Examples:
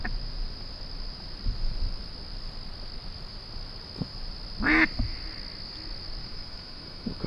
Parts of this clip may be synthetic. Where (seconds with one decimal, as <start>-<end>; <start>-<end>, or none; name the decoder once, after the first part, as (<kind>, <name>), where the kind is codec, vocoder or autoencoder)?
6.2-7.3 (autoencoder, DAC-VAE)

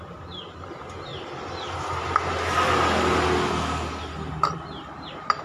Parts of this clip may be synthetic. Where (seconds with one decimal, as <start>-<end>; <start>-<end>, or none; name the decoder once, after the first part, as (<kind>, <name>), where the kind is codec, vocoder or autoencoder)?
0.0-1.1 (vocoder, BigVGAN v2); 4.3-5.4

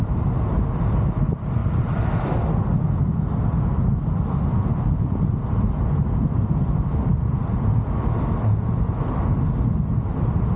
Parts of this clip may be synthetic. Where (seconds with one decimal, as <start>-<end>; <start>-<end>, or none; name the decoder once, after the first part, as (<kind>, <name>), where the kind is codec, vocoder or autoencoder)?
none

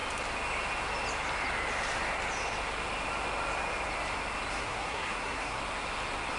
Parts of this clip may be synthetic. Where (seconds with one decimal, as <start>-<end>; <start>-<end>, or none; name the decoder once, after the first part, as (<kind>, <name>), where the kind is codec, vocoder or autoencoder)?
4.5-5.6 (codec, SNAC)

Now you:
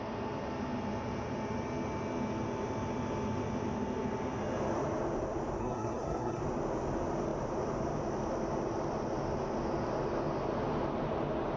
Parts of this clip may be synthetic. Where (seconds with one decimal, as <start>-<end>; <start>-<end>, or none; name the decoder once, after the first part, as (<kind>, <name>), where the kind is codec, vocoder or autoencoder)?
5.6-6.4 (codec, SNAC)

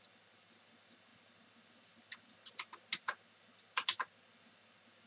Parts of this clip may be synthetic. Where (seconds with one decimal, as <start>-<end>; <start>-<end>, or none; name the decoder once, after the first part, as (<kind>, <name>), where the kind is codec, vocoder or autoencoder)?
none

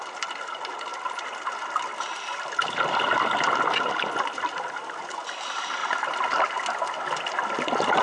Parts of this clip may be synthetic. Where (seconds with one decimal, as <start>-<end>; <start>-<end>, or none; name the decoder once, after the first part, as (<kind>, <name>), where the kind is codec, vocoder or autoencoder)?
none

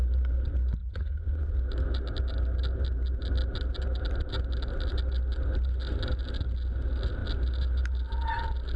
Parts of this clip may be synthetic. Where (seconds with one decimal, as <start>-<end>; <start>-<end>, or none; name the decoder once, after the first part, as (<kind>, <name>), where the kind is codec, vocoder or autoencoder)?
0.8-1.6 (vocoder, Vocos)